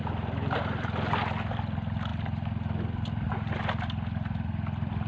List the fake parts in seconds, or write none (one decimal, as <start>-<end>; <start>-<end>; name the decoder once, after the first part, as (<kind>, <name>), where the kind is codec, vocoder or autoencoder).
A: none

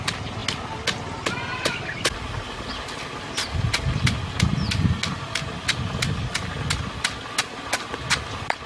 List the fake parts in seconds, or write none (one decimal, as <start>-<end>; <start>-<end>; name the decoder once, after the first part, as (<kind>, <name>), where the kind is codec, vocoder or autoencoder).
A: none

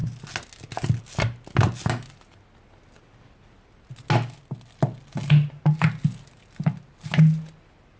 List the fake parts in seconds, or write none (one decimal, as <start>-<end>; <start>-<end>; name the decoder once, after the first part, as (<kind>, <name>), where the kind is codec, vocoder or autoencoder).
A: none

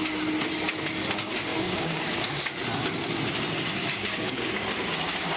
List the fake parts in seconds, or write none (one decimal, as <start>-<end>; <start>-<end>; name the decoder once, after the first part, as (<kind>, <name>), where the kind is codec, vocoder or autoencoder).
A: 1.5-2.4 (codec, DAC); 3.8-4.5

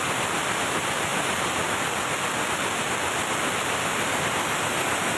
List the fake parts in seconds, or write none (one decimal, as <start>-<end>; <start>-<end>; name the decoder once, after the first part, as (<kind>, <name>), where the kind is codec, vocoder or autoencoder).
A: none

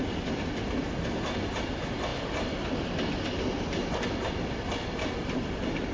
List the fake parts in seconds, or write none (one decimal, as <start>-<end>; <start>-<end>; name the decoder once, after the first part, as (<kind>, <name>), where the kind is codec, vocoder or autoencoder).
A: none

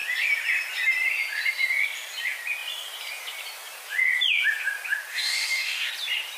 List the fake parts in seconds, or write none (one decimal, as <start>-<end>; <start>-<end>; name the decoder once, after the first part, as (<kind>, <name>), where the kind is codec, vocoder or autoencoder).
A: 5.1-5.9 (codec, DAC)

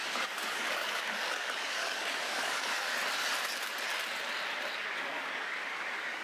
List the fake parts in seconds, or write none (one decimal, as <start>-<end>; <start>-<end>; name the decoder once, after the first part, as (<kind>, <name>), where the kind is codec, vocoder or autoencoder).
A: 0.0-2.9 (codec, DAC); 4.7-6.2